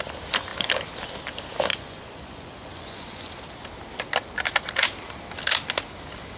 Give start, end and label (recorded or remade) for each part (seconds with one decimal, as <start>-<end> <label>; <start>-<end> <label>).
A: 0.0-1.7 recorded; 1.7-3.3 remade; 3.3-6.4 recorded